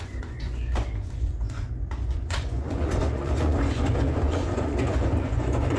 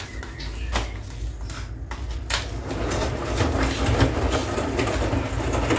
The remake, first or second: first